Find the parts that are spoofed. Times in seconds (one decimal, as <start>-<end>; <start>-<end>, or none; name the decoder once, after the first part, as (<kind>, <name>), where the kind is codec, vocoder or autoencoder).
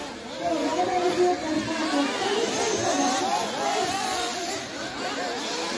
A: 3.3-4.5 (vocoder, Vocos)